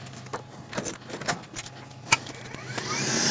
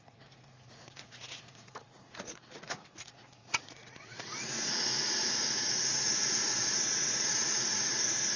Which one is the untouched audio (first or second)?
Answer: first